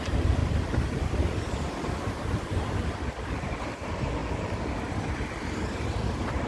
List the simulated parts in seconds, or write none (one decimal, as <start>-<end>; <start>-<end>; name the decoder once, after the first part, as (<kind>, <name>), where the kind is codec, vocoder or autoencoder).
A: none